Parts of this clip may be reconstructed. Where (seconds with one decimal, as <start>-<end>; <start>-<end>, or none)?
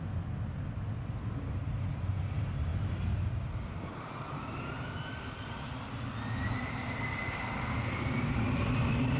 none